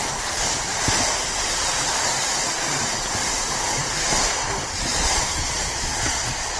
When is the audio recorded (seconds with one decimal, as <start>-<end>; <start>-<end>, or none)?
0.0-4.9